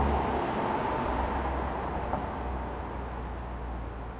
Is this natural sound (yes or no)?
yes